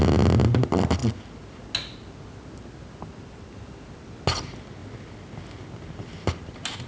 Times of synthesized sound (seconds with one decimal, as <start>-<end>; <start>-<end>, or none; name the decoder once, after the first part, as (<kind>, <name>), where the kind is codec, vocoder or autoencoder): none